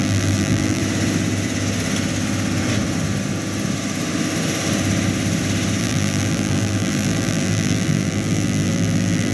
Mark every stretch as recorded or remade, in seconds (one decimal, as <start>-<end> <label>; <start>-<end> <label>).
0.0-0.8 remade; 0.8-5.8 recorded; 5.8-9.3 remade